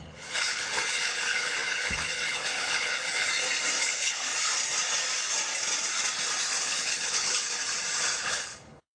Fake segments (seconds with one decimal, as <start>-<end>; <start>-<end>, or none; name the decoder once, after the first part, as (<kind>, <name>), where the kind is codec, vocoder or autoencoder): 0.0-3.3 (codec, HILCodec); 3.8-4.3; 6.6-7.6; 8.2-8.9